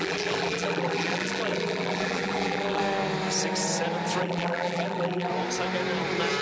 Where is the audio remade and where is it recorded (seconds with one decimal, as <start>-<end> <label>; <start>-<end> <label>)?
0.0-2.8 remade; 2.8-4.2 recorded; 4.2-5.3 remade; 5.3-6.4 recorded